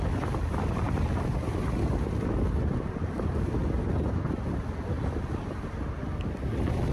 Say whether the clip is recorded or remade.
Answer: recorded